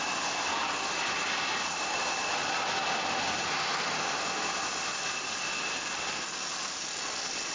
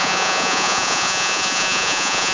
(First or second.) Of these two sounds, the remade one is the second